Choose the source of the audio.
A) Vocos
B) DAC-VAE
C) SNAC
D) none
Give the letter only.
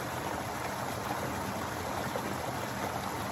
D